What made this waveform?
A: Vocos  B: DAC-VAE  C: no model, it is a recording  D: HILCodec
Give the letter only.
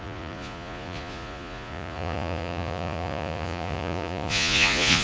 A